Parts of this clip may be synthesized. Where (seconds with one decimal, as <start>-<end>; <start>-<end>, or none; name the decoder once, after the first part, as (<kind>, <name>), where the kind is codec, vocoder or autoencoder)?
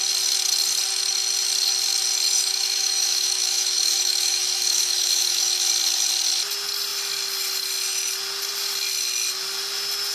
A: 2.4-5.7 (autoencoder, DAC-VAE)